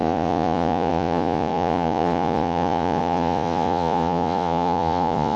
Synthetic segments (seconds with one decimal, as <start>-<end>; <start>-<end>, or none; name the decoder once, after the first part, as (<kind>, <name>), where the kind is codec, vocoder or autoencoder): 0.0-5.4 (vocoder, Vocos)